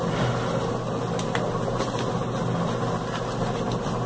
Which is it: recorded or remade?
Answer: recorded